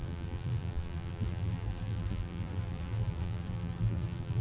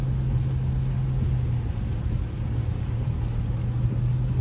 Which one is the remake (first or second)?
first